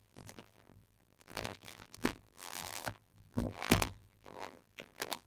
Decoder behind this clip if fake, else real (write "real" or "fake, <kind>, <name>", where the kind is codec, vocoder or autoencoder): fake, vocoder, BigVGAN v2